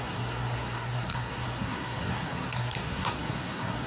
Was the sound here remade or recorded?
remade